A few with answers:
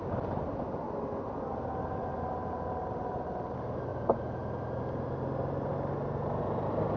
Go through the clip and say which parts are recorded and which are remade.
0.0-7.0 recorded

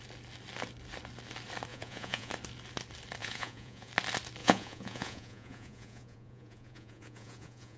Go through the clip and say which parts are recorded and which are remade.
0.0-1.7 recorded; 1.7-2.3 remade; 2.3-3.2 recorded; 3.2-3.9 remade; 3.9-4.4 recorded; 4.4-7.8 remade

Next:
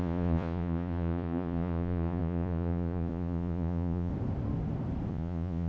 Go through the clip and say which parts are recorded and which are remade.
0.0-4.1 remade; 4.1-5.1 recorded; 5.1-5.7 remade

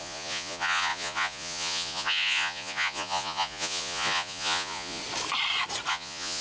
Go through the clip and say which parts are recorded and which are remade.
0.0-5.0 remade; 5.0-5.9 recorded; 5.9-6.4 remade